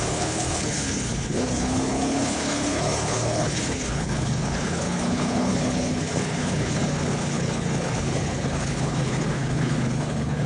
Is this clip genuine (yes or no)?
no